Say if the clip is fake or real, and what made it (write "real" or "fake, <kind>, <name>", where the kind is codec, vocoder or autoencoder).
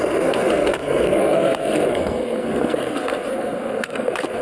fake, codec, SNAC